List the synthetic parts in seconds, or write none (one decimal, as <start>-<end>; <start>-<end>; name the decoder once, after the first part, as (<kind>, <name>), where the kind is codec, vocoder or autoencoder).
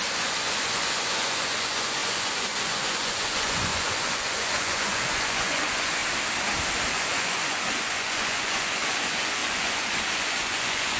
0.0-6.0 (vocoder, Vocos); 6.9-11.0